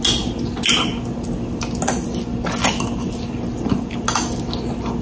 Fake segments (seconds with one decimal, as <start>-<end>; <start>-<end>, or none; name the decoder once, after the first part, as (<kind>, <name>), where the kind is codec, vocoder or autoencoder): none